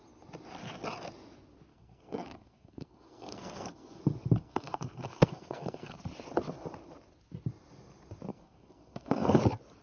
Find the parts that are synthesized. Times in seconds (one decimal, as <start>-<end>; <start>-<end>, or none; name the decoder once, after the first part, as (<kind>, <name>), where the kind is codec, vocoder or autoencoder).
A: 1.7-4.0 (codec, SNAC); 4.4-6.0; 8.3-9.4